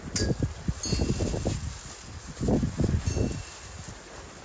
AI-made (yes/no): no